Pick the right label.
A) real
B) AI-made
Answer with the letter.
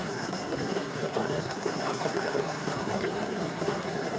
B